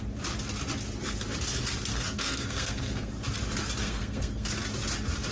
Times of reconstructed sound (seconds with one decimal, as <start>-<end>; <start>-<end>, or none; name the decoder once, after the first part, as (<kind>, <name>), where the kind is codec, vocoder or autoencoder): 1.9-3.1 (codec, SNAC); 3.8-4.5